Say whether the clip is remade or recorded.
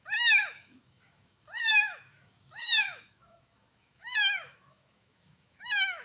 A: remade